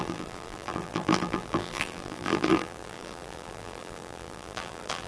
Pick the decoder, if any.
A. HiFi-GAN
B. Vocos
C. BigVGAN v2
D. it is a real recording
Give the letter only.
C